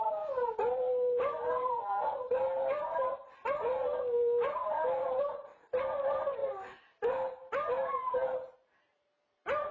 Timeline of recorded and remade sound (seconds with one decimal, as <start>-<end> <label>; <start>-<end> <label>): 0.0-4.6 remade; 4.6-5.2 recorded; 5.2-6.4 remade; 6.4-7.7 recorded; 7.7-9.7 remade